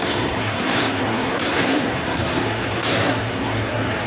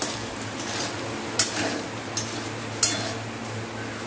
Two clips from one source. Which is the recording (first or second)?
second